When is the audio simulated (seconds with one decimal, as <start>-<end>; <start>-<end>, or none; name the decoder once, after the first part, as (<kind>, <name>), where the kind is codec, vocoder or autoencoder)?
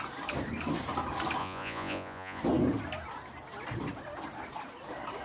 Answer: 1.4-2.4 (vocoder, Vocos)